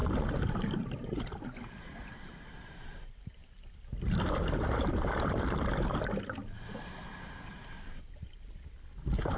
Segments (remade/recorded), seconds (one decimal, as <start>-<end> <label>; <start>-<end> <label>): 0.0-3.4 remade; 3.4-8.0 recorded; 8.0-9.4 remade